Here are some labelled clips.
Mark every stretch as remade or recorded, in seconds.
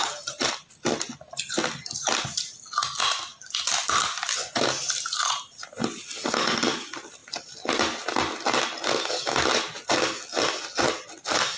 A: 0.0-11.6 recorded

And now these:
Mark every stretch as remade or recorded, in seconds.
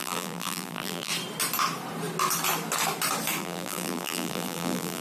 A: 0.0-1.1 remade; 1.1-3.4 recorded; 3.4-5.0 remade